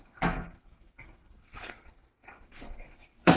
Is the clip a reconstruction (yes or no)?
yes